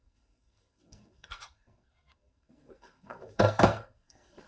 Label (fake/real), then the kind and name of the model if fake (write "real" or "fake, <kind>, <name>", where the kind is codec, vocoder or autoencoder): fake, codec, SNAC